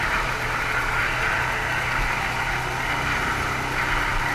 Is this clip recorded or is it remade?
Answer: recorded